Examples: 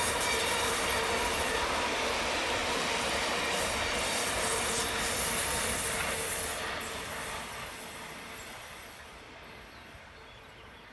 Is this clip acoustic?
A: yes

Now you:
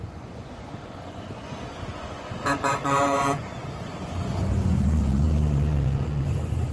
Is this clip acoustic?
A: no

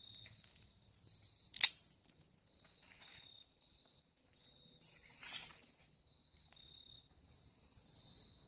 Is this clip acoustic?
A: yes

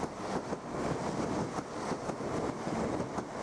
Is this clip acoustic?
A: yes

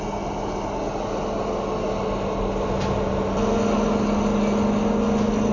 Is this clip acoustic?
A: yes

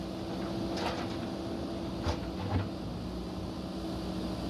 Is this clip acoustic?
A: yes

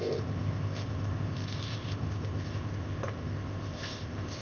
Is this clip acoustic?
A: no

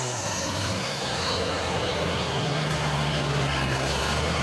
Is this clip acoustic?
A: no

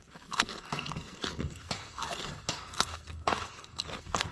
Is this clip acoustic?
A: no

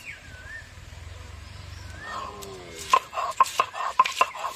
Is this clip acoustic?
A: no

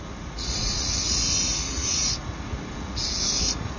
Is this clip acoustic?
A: no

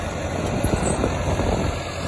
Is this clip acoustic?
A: yes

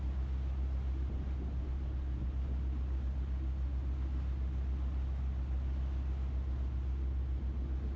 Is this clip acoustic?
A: yes